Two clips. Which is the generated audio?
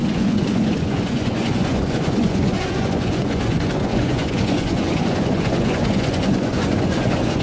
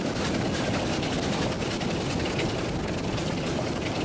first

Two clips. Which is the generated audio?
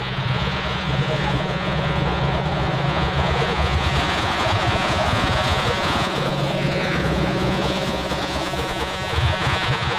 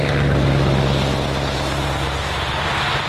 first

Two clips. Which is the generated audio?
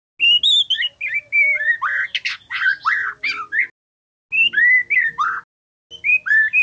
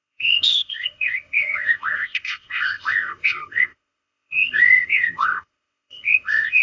second